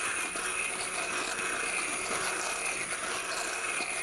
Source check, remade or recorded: recorded